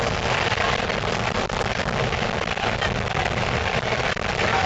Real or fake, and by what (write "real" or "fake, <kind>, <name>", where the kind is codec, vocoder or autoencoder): real